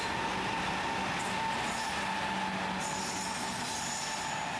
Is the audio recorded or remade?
recorded